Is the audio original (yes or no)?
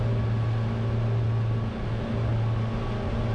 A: yes